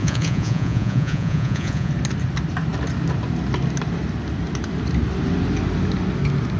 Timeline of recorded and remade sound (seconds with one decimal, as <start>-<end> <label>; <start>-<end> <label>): 0.0-1.9 remade; 1.9-6.6 recorded